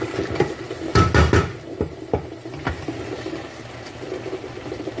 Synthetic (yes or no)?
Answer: no